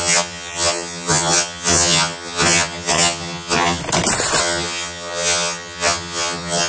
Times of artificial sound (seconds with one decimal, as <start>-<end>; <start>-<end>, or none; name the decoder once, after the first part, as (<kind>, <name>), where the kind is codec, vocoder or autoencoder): 0.0-3.8 (vocoder, HiFi-GAN); 4.4-6.7